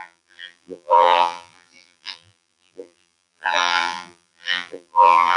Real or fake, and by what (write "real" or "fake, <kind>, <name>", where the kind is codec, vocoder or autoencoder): fake, vocoder, BigVGAN v2